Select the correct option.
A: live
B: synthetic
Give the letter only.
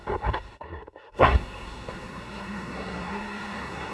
B